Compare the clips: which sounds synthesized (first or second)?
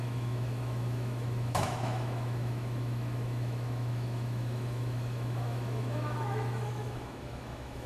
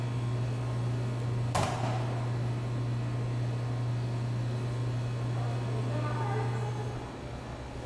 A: first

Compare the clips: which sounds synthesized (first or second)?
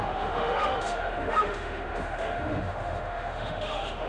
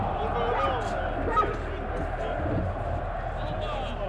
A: first